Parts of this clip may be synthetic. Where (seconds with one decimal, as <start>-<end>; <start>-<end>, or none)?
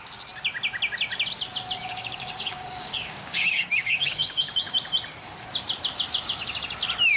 1.8-4.7